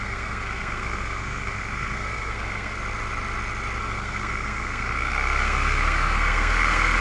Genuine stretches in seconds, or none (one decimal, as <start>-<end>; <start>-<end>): 2.8-3.8